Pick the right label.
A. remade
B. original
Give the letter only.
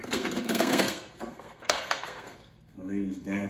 A